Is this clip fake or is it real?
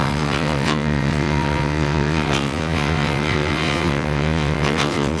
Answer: fake